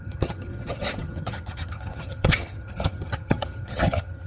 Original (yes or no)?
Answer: no